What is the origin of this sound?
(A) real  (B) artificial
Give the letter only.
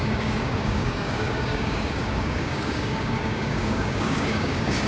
B